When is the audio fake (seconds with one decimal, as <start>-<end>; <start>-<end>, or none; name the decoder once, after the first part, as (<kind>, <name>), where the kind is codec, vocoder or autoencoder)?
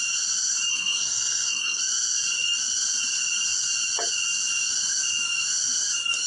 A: 0.7-1.8 (codec, SNAC)